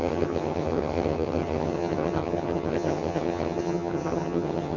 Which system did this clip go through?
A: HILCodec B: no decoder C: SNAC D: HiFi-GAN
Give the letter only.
D